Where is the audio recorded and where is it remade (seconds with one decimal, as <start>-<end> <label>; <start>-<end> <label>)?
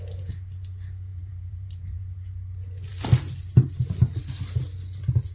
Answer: 0.0-1.1 recorded; 1.1-2.0 remade; 2.0-5.3 recorded